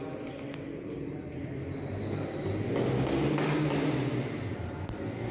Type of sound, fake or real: real